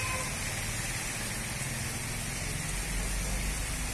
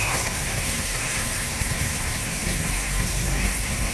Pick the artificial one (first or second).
second